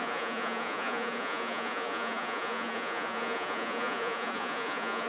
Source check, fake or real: fake